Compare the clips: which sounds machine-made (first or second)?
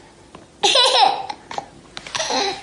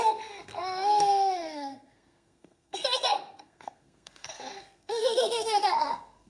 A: second